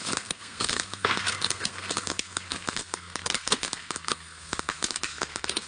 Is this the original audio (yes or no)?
no